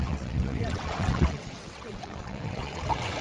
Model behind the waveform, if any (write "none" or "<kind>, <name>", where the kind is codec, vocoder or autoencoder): vocoder, WaveNeXt